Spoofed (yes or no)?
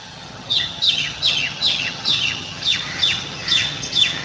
yes